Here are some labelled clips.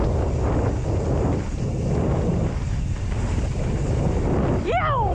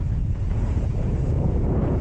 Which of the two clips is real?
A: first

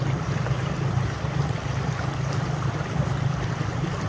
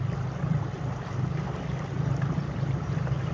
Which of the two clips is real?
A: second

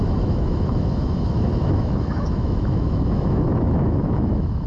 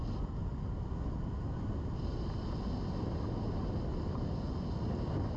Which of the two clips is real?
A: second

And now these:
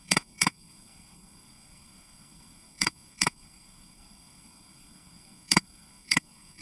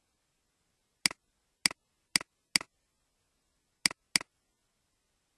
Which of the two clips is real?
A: second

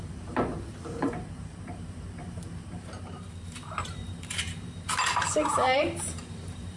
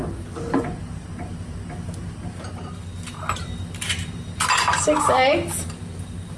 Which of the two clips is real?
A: second